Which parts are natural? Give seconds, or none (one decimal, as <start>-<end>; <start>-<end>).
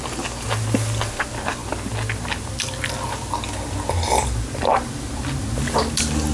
0.0-6.3